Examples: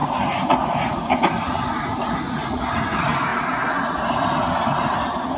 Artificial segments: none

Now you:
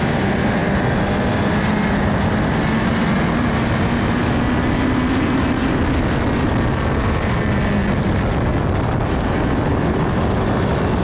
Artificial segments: none